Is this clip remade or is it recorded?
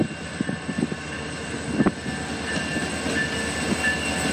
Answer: recorded